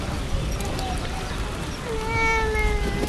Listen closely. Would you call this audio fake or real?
real